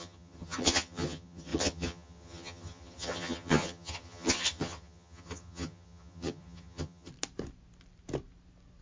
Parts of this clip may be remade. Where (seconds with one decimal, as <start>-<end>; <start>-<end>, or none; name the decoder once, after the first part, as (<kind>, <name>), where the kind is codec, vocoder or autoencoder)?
0.0-7.1 (vocoder, HiFi-GAN)